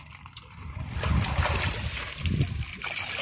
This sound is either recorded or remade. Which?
recorded